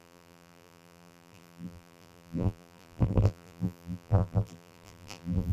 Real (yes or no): no